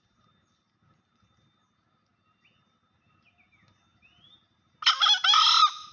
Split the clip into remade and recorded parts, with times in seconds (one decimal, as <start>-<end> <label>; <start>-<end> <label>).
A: 0.0-5.9 recorded